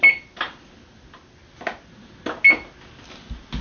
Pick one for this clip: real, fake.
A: real